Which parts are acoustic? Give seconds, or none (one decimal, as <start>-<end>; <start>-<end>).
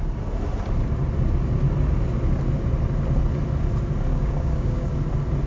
0.0-4.1; 4.9-5.5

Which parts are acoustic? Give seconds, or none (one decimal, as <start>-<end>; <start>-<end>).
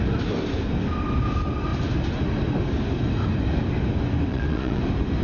0.0-4.3; 4.8-5.2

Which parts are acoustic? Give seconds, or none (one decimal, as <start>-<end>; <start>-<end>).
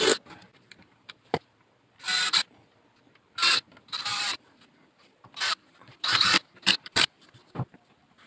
0.0-0.5; 1.4-4.1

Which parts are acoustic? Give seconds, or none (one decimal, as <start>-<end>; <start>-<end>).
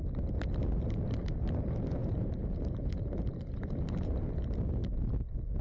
0.0-2.0; 4.3-5.6